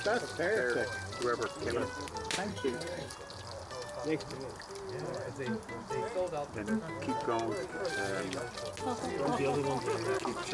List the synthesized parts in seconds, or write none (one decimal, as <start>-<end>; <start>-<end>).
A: 2.5-3.1